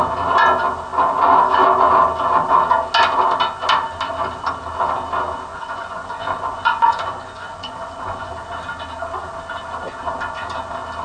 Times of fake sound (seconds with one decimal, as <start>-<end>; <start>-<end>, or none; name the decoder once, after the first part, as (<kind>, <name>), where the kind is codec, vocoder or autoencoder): 5.5-8.3 (vocoder, Vocos)